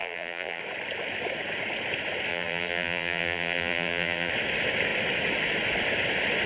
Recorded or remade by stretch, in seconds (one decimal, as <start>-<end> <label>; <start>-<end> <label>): 0.0-0.6 remade; 0.6-2.3 recorded; 2.3-4.3 remade; 4.3-6.5 recorded